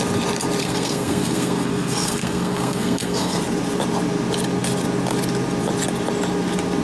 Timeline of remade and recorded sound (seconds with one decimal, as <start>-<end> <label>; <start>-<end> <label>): 0.0-0.6 recorded; 0.6-3.4 remade; 3.4-6.8 recorded